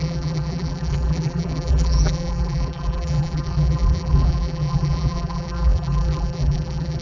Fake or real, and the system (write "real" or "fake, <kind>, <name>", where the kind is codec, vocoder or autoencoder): fake, vocoder, BigVGAN v2